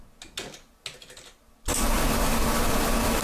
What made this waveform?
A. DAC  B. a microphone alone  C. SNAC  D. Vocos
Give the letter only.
B